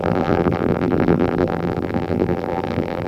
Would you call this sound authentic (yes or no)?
no